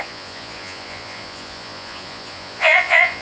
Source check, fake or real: fake